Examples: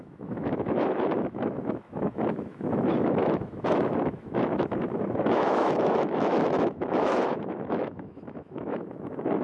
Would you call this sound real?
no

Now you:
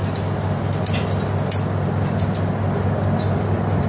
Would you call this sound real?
yes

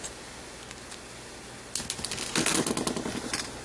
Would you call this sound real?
yes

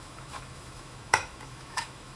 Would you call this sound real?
no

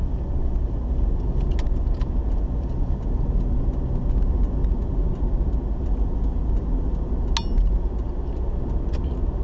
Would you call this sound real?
yes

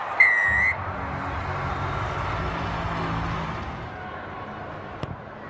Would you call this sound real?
yes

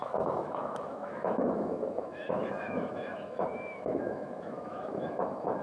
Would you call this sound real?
no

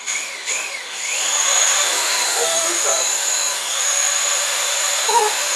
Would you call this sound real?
no